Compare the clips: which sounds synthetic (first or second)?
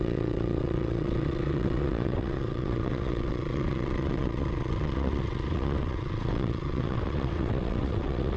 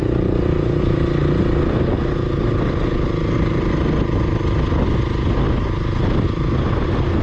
first